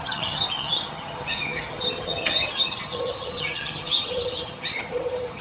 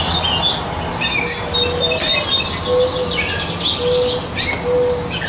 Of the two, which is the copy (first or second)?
first